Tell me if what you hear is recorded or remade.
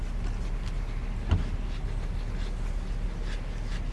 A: recorded